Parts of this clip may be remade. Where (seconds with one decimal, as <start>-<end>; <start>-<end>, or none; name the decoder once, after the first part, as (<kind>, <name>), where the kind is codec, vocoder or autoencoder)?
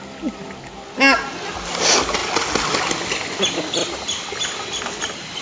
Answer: 3.8-4.8 (vocoder, BigVGAN v2)